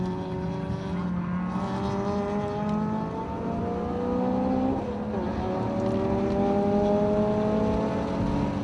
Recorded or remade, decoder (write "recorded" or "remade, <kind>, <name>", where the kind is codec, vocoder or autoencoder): recorded